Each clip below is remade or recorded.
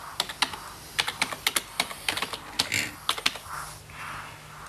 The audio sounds recorded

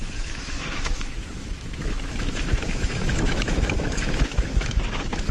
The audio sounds remade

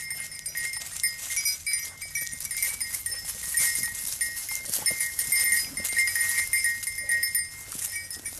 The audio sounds recorded